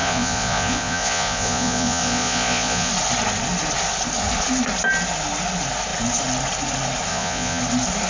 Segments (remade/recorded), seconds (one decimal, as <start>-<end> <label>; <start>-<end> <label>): 0.0-2.9 remade; 2.9-7.1 recorded; 7.1-7.6 remade; 7.6-8.1 recorded

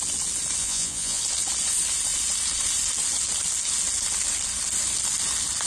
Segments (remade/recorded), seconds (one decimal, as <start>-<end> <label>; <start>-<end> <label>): 0.0-0.6 recorded; 0.6-1.2 remade; 1.2-5.7 recorded

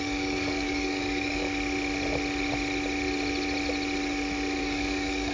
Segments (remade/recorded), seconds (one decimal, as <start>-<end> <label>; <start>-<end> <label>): 0.0-1.4 remade; 1.4-4.6 recorded; 4.6-5.3 remade

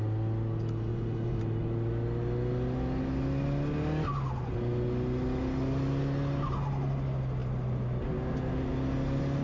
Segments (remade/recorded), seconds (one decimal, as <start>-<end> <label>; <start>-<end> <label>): 0.0-0.9 recorded; 0.9-1.4 remade; 1.4-9.4 recorded

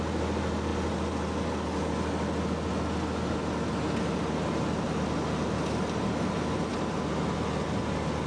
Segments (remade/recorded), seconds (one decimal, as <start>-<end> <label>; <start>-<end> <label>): 0.0-8.3 recorded

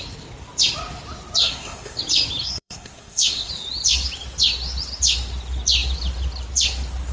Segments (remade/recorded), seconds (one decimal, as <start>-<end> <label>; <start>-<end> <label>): 0.0-1.4 recorded; 1.4-2.0 remade; 2.0-2.4 recorded; 2.4-3.5 remade; 3.5-7.1 recorded

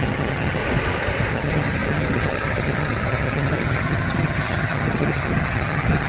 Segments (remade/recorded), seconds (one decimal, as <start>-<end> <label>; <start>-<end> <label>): 0.0-0.6 remade; 0.6-1.3 recorded; 1.3-6.1 remade